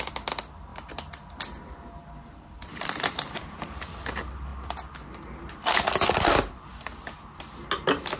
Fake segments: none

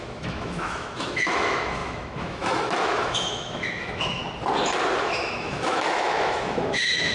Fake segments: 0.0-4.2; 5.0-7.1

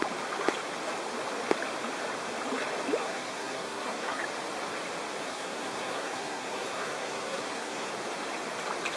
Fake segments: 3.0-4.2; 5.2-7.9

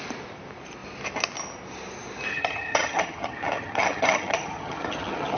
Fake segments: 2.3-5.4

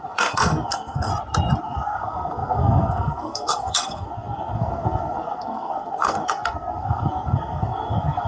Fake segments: 0.0-1.1; 1.6-8.3

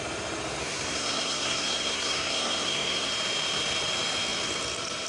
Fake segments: 0.6-3.1